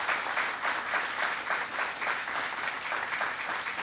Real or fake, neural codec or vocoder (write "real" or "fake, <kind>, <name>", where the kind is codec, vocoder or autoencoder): real